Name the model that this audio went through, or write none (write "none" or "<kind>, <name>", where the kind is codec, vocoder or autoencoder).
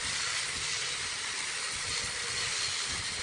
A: none